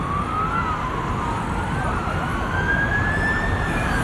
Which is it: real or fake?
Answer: real